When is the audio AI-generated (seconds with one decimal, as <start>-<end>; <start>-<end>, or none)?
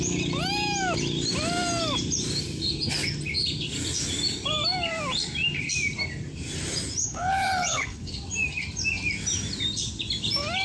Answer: 7.0-8.1